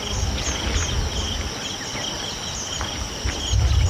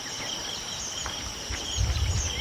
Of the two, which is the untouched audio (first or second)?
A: first